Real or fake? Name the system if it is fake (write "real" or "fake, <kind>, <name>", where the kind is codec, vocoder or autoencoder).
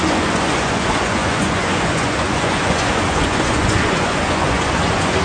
fake, vocoder, Vocos